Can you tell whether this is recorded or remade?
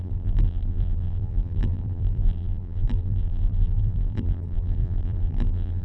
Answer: remade